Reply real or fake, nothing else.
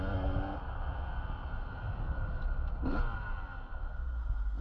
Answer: real